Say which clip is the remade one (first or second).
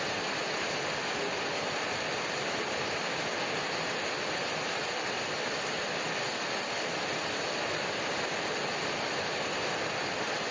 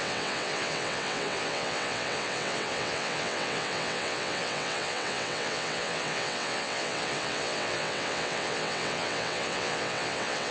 second